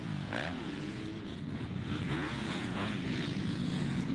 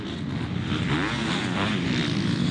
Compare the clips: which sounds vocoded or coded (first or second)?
first